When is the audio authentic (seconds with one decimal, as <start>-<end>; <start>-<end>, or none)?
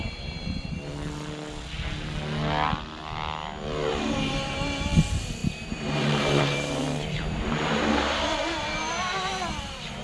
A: 0.9-3.9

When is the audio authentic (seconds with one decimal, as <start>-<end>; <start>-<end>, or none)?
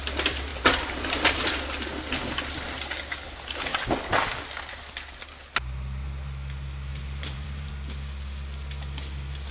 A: 0.0-0.5; 1.5-6.9; 7.7-9.5